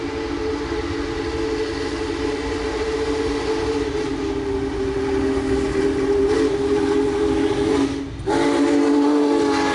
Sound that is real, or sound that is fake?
real